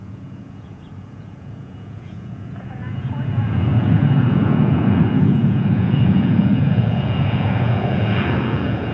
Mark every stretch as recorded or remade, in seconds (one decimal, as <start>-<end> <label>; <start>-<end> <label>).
0.0-8.9 remade